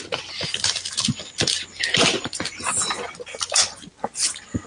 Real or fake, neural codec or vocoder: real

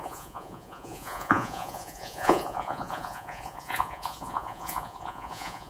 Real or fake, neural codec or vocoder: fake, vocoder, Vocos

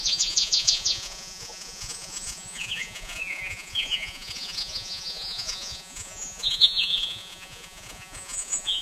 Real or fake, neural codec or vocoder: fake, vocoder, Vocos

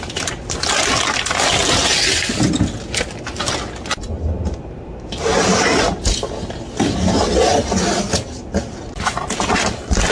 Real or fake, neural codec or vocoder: real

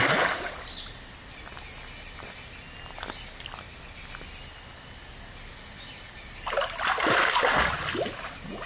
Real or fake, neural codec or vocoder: real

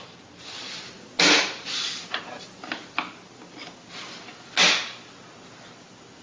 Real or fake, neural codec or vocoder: real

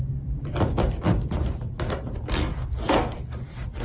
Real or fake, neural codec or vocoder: real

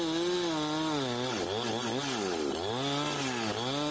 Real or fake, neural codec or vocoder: real